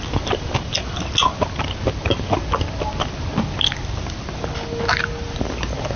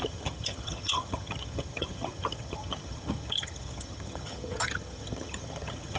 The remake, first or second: second